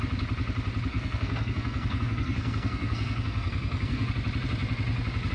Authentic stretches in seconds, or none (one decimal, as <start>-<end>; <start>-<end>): 0.0-0.9; 4.1-5.3